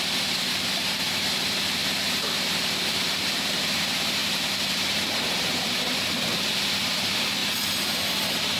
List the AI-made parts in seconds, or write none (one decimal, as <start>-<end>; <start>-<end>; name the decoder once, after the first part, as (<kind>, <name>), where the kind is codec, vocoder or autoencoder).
0.0-7.4 (vocoder, BigVGAN v2); 7.9-8.6